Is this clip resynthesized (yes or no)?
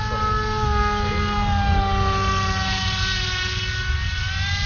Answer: no